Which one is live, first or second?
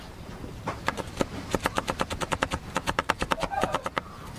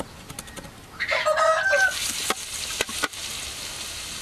second